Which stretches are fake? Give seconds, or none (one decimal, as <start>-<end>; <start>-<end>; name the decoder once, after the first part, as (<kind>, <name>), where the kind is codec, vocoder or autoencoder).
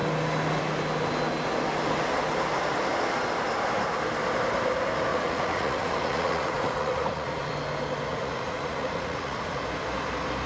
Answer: 5.1-7.5 (vocoder, Vocos); 8.1-9.6